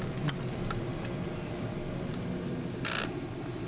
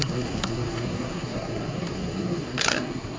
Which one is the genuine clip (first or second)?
first